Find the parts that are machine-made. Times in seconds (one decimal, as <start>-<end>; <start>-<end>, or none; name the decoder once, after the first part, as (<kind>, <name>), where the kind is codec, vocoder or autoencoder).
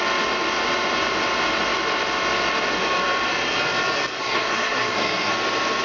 4.2-5.3 (codec, SNAC)